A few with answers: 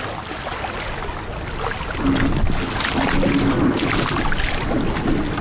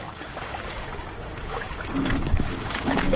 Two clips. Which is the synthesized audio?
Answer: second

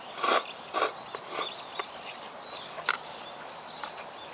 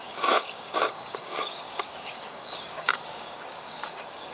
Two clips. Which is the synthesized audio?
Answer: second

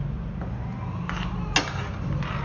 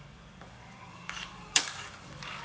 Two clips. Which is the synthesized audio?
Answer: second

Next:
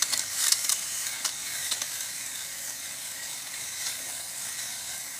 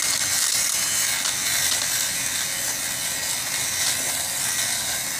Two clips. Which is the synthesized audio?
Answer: first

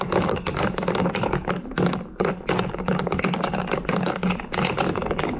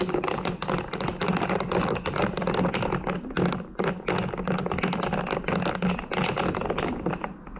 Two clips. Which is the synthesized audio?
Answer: first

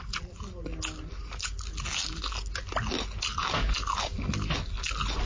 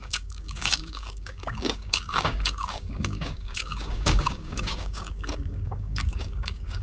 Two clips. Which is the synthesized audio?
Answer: second